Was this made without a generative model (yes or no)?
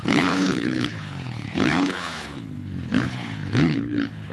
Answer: no